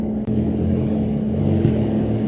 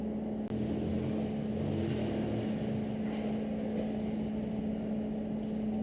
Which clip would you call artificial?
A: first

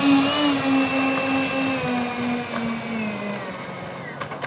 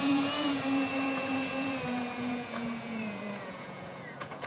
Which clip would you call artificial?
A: second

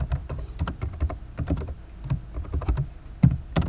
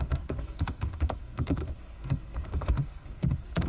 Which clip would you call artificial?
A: second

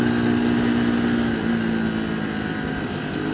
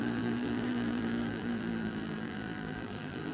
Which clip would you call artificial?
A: second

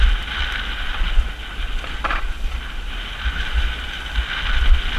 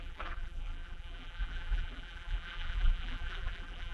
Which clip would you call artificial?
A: second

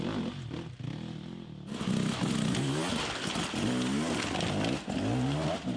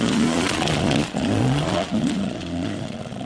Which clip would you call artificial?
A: second